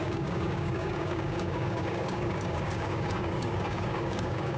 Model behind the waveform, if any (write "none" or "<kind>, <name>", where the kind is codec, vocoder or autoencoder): codec, DAC